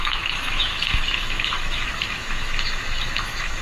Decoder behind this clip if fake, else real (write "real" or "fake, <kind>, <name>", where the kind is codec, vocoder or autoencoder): fake, autoencoder, DAC-VAE